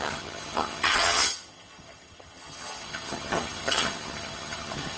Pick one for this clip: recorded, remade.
remade